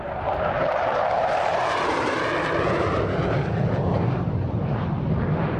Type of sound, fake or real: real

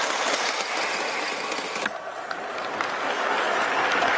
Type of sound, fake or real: real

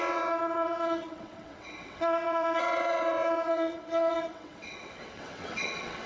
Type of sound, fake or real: fake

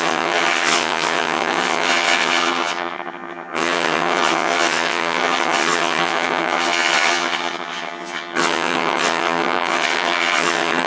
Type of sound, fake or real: fake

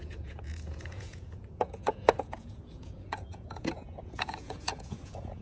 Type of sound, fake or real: fake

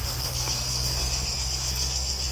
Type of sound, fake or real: fake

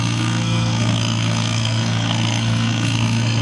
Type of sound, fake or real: fake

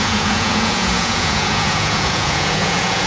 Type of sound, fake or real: fake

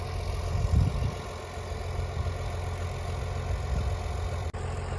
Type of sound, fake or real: real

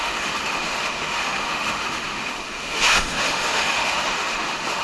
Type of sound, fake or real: fake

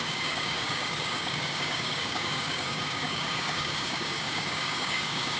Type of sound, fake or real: fake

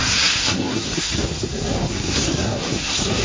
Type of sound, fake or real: fake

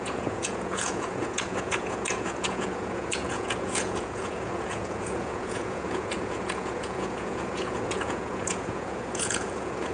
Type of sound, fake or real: fake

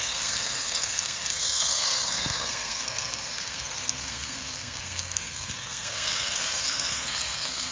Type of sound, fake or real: fake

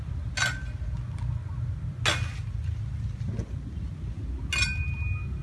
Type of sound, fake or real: real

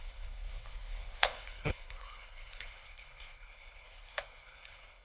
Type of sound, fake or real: fake